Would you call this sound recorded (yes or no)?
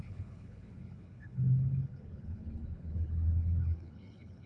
no